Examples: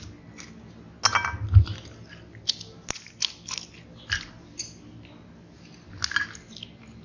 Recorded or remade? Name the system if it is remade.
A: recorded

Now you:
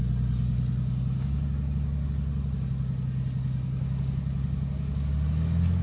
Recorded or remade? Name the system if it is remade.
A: recorded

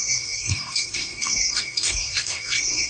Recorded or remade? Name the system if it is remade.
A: remade, codec, SNAC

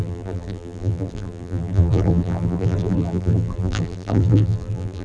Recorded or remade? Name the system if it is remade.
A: remade, vocoder, BigVGAN v2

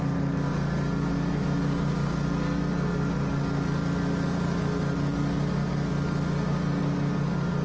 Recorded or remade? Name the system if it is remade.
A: recorded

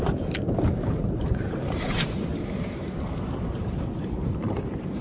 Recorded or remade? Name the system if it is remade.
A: remade, vocoder, BigVGAN v2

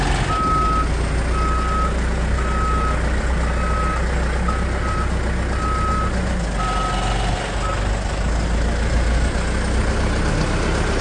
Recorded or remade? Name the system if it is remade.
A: recorded